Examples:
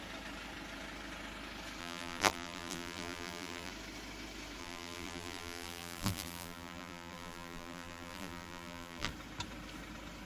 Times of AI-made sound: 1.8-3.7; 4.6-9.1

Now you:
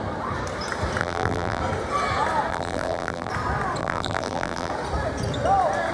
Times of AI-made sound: 1.0-1.6; 2.5-3.3; 3.8-4.7

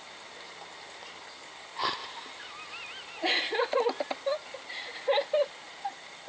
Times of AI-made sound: 2.0-3.5; 4.7-5.6

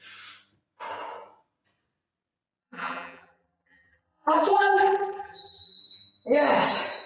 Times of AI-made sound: 2.6-5.8

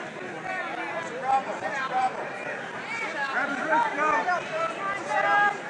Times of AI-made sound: 1.4-4.8

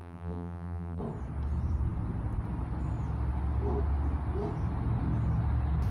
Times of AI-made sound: 0.0-1.0

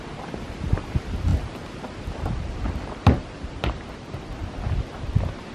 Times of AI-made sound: 1.3-4.6